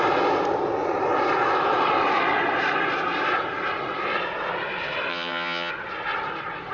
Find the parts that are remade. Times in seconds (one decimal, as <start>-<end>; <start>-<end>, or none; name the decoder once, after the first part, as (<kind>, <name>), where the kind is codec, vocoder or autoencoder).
5.1-5.7 (vocoder, HiFi-GAN)